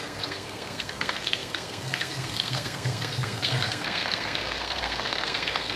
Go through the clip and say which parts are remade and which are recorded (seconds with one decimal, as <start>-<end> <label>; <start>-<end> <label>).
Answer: 0.0-5.8 remade